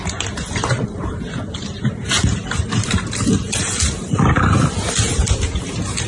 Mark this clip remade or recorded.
remade